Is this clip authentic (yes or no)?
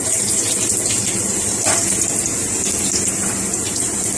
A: yes